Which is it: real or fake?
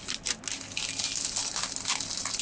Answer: real